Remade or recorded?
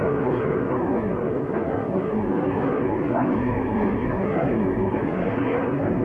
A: remade